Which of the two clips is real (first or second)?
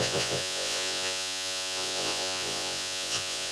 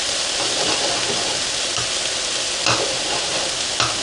second